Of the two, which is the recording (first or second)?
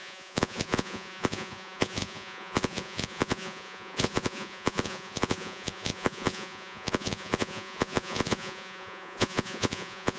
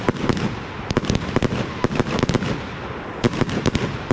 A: second